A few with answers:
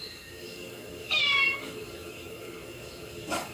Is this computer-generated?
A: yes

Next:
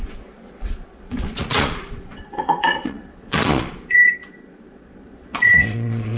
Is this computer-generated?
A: yes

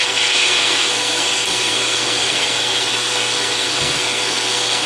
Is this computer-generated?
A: yes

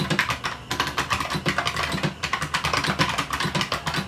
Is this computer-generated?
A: no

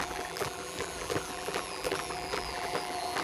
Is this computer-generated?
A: yes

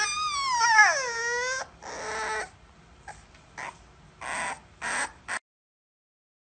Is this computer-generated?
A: no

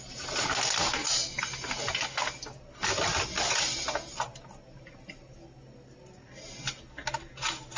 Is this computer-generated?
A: no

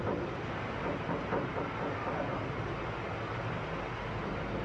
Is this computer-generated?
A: no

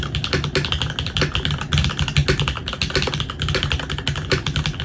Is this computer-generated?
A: no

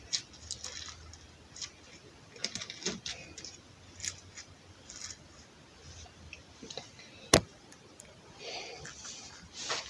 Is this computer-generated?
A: no